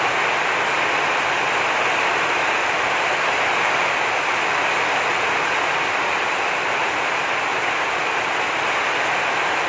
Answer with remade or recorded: recorded